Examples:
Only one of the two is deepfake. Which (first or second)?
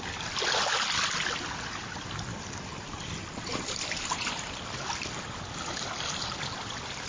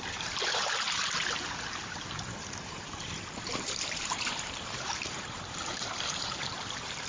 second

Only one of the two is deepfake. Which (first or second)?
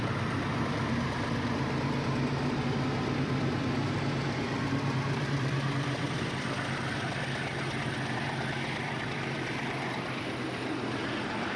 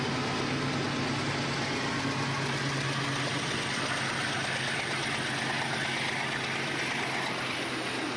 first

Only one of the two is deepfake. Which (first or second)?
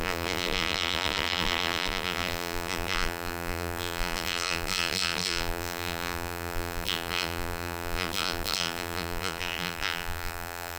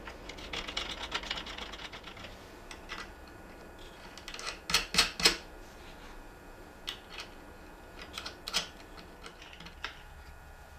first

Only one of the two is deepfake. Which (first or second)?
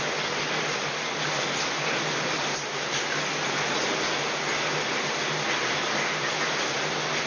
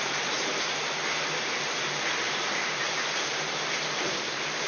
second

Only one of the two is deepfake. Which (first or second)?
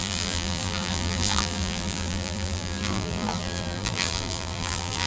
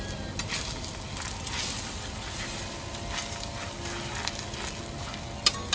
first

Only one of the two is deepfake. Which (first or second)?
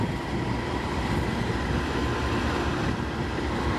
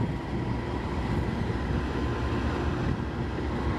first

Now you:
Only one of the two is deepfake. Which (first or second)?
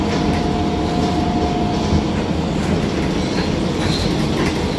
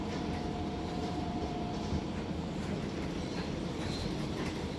second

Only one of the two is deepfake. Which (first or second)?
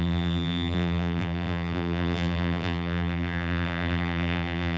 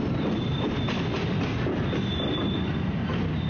first